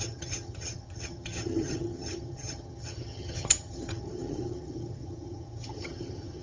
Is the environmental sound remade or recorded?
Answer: remade